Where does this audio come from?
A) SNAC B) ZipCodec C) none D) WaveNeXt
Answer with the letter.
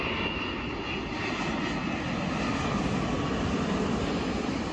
C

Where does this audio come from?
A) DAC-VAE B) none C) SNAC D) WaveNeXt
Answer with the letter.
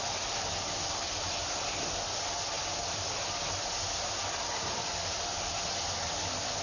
B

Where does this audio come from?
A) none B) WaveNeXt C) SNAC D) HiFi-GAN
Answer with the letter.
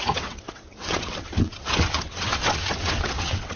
B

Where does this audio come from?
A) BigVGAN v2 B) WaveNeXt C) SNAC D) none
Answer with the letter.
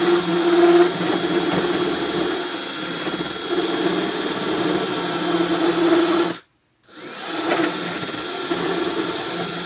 D